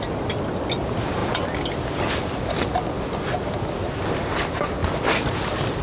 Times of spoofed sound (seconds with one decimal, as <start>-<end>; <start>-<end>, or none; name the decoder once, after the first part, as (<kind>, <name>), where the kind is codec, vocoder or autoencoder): none